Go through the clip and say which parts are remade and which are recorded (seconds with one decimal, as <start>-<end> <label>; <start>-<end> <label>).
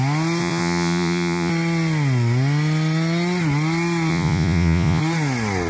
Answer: 0.0-0.4 recorded; 0.4-1.5 remade; 1.5-4.1 recorded; 4.1-5.0 remade; 5.0-5.7 recorded